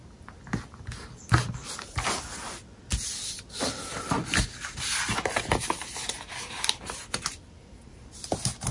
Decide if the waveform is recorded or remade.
recorded